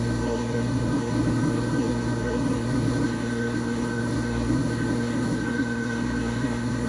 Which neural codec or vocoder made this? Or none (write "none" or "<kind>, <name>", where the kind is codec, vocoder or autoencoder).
codec, SNAC